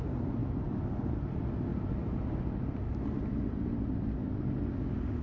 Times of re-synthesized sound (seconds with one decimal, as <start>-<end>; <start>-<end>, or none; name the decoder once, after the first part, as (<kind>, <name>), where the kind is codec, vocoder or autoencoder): none